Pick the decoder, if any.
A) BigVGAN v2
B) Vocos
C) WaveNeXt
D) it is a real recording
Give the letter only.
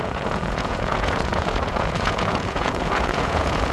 B